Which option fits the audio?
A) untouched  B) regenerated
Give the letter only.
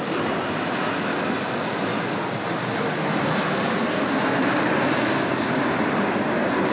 A